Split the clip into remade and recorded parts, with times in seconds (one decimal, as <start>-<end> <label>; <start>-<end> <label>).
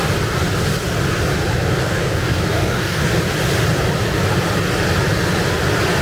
0.0-1.8 recorded; 1.8-3.0 remade; 3.0-6.0 recorded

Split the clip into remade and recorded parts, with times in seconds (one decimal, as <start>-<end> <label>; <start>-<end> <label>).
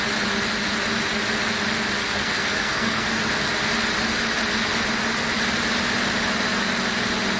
0.0-2.0 recorded; 2.0-3.2 remade; 3.2-7.4 recorded